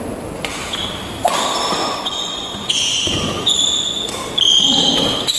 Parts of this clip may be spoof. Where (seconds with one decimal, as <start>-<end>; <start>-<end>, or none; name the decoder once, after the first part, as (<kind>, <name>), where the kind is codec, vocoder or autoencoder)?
1.8-4.1 (vocoder, Vocos)